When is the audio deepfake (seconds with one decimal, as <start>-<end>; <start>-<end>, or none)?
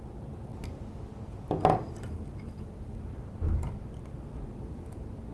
none